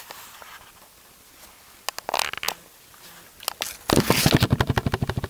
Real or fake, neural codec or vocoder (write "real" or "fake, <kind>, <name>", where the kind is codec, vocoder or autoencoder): real